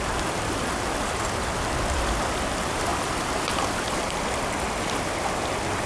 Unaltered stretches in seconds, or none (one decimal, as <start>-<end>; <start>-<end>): 0.0-5.9